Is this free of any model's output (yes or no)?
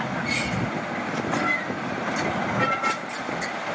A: yes